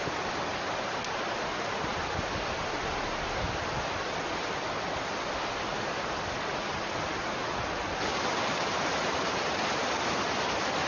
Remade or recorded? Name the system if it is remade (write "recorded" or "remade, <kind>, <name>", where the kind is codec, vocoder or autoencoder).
recorded